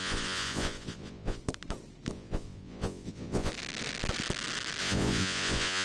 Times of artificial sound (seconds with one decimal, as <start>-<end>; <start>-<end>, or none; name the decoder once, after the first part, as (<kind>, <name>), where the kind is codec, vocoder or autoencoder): 0.0-1.4 (vocoder, Vocos); 2.1-3.5; 4.8-5.8